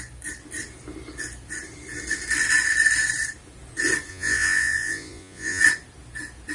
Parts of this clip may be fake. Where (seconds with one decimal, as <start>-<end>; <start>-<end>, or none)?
4.1-5.6